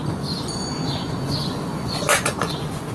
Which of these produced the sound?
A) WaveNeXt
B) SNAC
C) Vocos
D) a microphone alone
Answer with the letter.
C